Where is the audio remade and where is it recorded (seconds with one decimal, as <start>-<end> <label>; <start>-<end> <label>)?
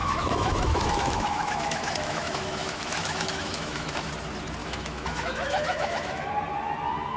0.0-4.1 remade; 4.1-4.6 recorded; 4.6-6.3 remade; 6.3-7.2 recorded